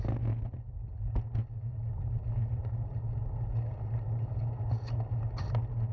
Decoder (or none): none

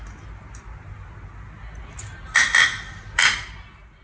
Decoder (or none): none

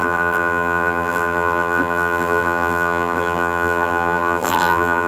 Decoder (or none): vocoder, BigVGAN v2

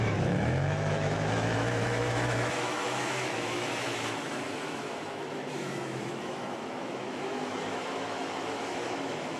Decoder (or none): autoencoder, DAC-VAE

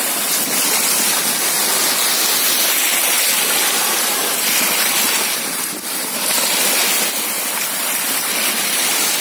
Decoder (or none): none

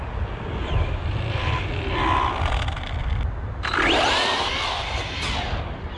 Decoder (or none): none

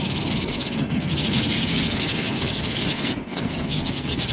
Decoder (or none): codec, SNAC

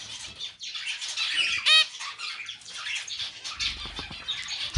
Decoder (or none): none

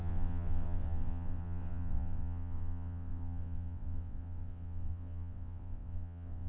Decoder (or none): vocoder, WaveNeXt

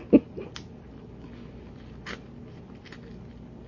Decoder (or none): none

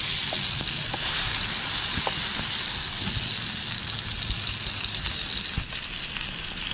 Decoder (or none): none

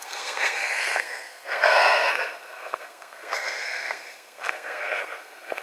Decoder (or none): codec, SNAC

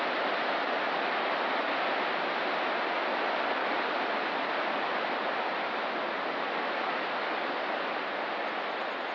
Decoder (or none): none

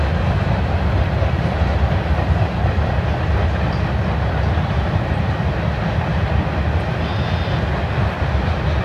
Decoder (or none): none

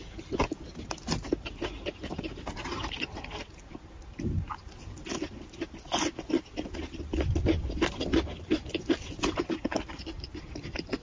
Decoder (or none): none